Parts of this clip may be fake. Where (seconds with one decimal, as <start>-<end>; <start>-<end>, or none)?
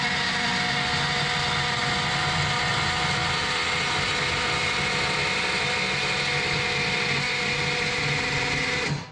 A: none